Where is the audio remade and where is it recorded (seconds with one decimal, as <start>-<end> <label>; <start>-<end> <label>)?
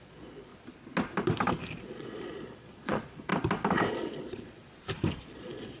0.0-0.5 remade; 0.5-1.8 recorded; 1.8-3.3 remade; 3.3-3.9 recorded; 3.9-4.6 remade; 4.6-5.2 recorded; 5.2-5.8 remade